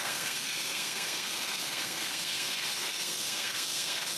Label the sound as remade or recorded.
remade